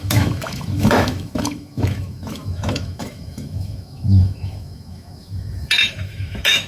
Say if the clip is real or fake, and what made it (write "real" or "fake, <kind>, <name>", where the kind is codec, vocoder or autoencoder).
fake, autoencoder, DAC-VAE